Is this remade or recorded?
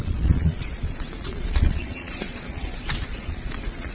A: remade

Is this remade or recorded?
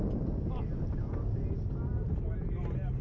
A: recorded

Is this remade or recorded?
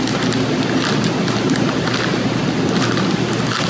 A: recorded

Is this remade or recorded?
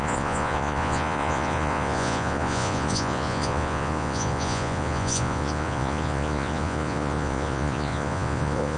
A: remade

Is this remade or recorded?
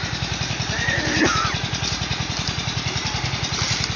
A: remade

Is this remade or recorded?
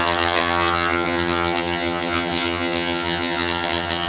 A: remade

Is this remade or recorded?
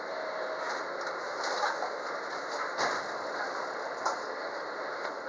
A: recorded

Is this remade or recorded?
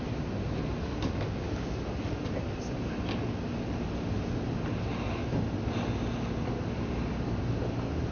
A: recorded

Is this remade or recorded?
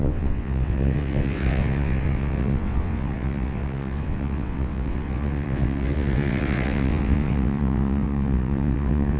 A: remade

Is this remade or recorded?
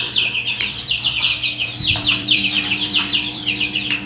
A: remade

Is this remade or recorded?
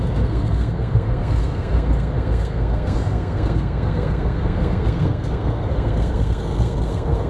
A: remade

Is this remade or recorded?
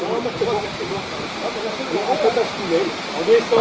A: recorded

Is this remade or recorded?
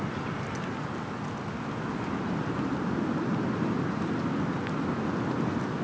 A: recorded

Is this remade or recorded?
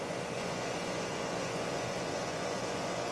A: remade